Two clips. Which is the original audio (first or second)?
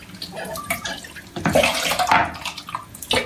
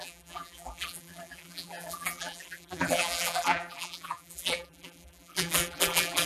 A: first